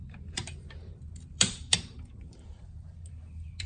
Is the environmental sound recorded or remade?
remade